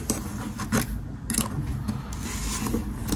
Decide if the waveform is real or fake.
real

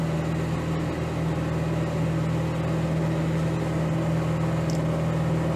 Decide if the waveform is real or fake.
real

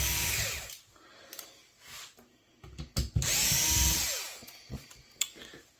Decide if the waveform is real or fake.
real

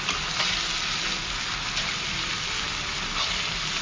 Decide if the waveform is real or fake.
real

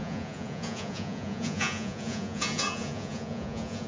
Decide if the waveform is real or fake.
fake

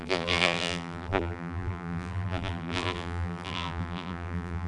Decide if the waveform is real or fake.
fake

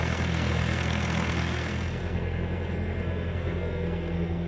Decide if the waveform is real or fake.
fake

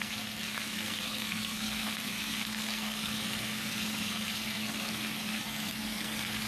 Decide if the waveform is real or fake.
fake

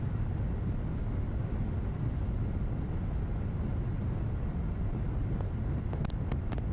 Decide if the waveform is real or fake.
real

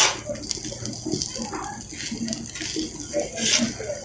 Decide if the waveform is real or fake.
real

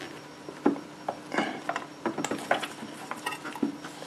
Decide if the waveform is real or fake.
real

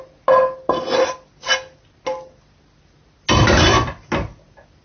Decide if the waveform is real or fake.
real